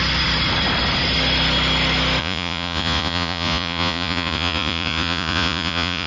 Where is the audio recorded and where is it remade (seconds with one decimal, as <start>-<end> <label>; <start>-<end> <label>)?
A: 0.0-2.2 recorded; 2.2-6.1 remade